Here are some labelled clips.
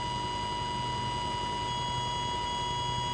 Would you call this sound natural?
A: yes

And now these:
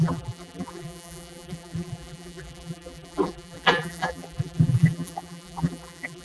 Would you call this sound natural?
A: no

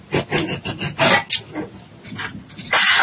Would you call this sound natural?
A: yes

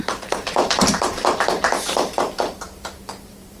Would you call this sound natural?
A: no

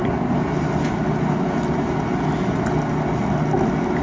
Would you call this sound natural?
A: yes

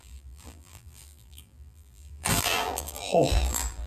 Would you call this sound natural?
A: no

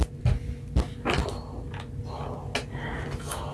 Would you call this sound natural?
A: yes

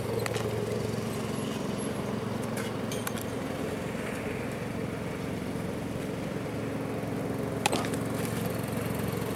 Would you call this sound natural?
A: yes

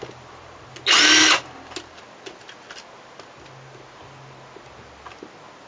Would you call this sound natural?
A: yes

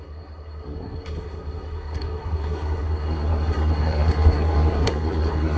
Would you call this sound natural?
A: no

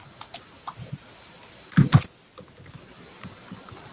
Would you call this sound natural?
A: yes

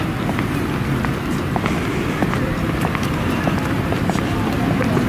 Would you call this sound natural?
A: yes